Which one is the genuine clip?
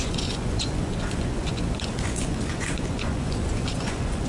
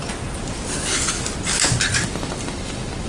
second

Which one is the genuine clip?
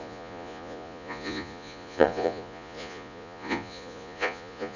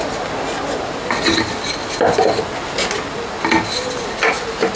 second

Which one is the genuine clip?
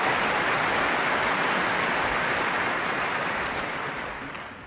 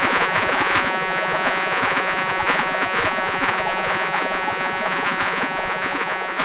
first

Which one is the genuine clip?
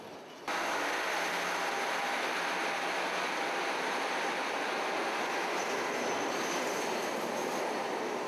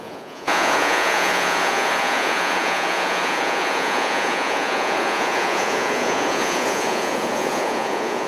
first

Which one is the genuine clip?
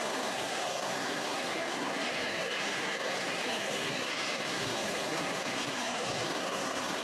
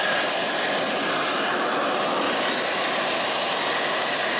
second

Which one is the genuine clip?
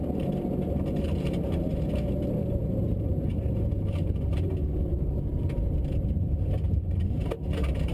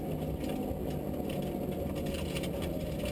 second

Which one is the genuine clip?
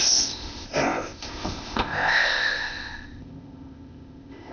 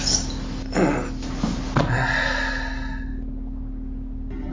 second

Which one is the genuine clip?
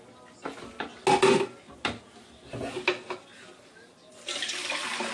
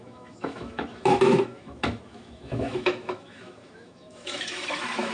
first